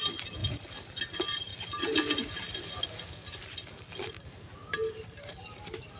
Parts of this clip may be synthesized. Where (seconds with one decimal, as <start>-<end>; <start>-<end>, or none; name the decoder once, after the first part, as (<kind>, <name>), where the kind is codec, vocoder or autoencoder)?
0.4-1.0 (vocoder, BigVGAN v2); 1.5-3.1